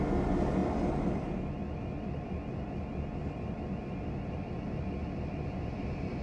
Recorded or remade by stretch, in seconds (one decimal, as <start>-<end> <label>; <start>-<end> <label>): 0.0-6.2 recorded